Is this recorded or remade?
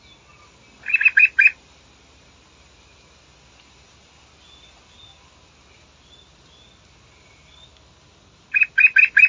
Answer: recorded